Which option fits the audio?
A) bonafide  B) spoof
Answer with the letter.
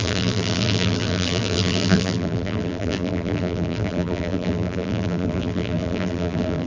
B